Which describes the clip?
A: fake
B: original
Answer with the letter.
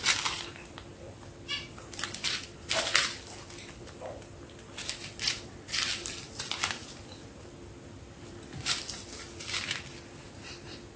B